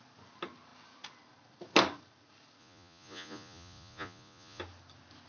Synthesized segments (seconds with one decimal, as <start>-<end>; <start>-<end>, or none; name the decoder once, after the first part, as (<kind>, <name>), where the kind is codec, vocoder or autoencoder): 2.6-4.6 (vocoder, Vocos)